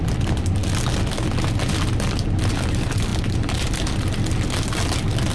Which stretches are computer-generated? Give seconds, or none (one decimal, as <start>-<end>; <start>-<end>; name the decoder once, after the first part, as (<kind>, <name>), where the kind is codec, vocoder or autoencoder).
none

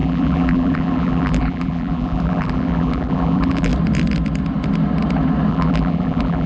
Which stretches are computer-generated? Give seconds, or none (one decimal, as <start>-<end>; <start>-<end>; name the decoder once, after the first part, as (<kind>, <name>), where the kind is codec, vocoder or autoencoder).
0.0-3.7 (vocoder, BigVGAN v2); 5.5-6.5